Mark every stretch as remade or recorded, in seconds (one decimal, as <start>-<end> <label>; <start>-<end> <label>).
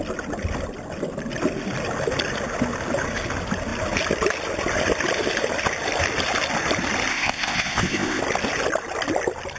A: 0.0-7.1 recorded; 7.1-8.2 remade; 8.2-9.6 recorded